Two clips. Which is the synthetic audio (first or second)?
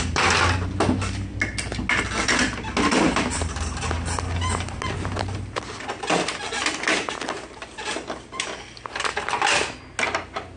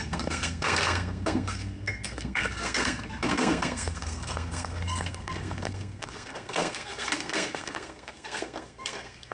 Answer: second